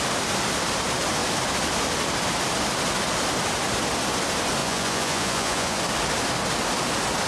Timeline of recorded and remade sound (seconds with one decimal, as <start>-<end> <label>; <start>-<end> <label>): 0.0-4.6 recorded; 4.6-5.8 remade; 5.8-7.3 recorded